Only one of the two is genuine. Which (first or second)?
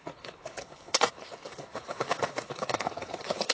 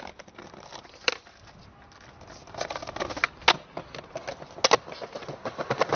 second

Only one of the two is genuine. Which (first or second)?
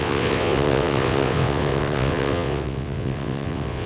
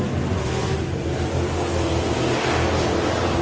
second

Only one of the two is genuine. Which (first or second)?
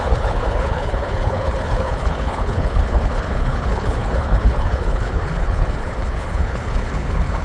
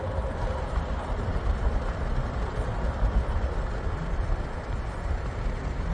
second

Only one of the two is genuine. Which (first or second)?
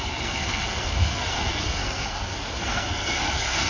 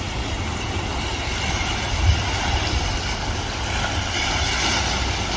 second